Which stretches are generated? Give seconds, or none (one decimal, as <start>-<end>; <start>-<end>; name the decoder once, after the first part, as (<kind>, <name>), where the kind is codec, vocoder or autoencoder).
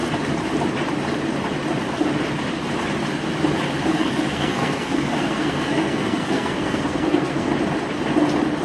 3.9-7.5 (codec, SNAC)